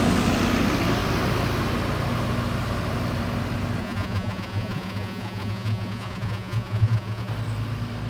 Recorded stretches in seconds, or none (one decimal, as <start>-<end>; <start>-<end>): 0.0-3.8; 7.3-8.1